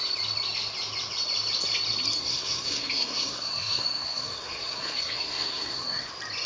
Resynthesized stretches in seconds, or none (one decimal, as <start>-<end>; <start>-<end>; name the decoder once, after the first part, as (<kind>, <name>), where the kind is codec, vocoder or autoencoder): 2.2-6.1 (codec, SNAC)